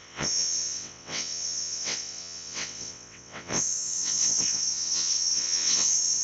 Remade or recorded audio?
remade